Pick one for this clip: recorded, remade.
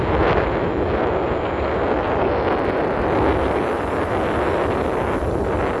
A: recorded